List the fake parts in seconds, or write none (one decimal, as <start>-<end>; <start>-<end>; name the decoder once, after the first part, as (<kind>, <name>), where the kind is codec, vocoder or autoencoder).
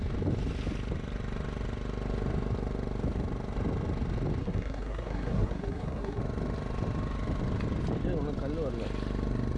4.4-6.2 (codec, SNAC)